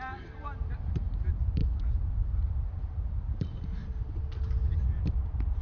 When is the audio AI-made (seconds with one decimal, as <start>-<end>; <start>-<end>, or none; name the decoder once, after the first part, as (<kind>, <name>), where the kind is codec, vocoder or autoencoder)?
0.0-1.6 (vocoder, BigVGAN v2); 2.8-3.8; 4.5-5.6